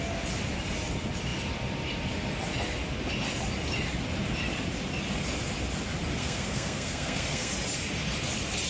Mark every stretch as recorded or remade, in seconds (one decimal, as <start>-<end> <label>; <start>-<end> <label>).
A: 0.0-6.2 recorded; 6.2-7.5 remade; 7.5-8.7 recorded